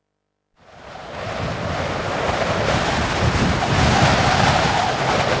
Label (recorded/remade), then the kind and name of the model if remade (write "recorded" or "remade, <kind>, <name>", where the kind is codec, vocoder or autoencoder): recorded